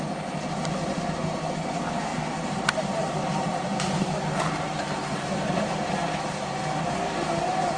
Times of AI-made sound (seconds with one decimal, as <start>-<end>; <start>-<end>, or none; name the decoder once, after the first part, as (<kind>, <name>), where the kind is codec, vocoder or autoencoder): 2.1-4.1 (vocoder, BigVGAN v2)